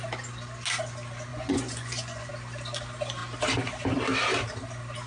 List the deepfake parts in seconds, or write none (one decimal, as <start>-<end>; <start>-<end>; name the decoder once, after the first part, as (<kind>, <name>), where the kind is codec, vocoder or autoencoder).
1.3-2.3 (vocoder, Vocos)